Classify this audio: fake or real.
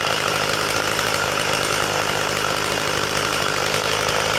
fake